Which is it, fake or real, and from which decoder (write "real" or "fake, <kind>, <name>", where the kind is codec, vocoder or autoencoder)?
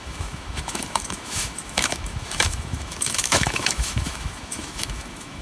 fake, autoencoder, DAC-VAE